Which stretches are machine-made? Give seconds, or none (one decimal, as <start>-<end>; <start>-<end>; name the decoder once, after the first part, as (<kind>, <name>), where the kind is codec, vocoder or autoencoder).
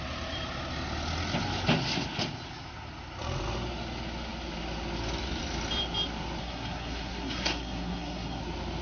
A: 6.4-8.4 (codec, SNAC)